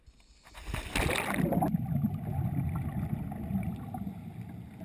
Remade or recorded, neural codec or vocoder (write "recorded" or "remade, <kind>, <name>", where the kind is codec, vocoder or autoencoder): recorded